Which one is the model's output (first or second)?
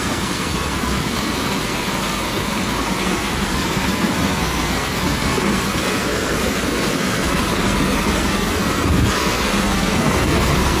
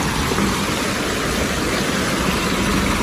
first